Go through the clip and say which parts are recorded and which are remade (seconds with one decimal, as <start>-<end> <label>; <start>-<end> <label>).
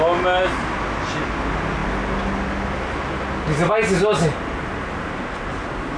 0.0-6.0 recorded